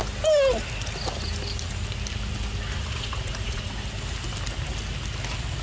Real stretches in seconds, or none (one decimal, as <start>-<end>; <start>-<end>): 0.0-2.8; 3.7-5.6